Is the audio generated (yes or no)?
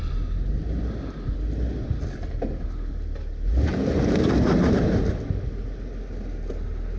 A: no